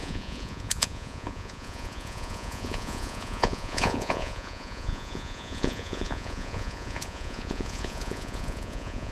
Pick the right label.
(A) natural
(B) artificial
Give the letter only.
B